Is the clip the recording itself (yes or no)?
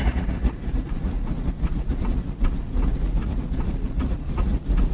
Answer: no